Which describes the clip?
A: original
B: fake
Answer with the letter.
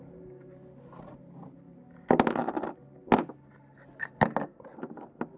A